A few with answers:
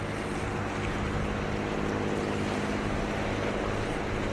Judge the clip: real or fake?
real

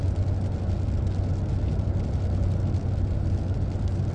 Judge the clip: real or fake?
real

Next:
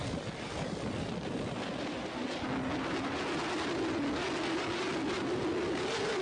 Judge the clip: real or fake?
real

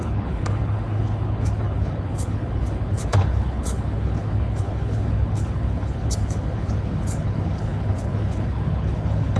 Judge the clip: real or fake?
fake